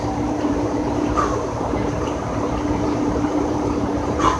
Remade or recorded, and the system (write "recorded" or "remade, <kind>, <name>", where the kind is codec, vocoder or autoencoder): remade, vocoder, BigVGAN v2